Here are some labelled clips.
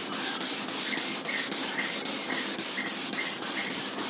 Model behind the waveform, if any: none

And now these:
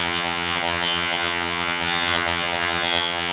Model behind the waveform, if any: vocoder, HiFi-GAN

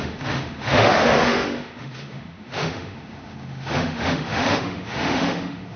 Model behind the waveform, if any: autoencoder, DAC-VAE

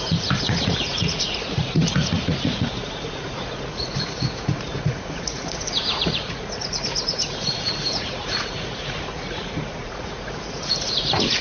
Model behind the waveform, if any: vocoder, Vocos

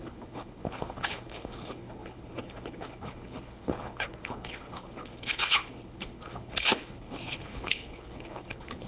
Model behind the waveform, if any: codec, HILCodec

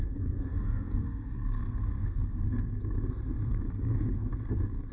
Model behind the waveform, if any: codec, SNAC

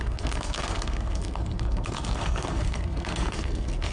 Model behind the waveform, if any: codec, SNAC